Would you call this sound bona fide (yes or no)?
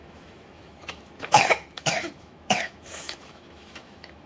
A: no